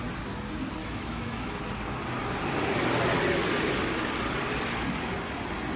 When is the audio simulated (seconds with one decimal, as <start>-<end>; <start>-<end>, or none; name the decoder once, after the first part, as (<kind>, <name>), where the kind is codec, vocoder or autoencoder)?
0.8-1.6 (autoencoder, DAC-VAE)